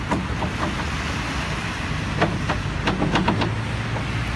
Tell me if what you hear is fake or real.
real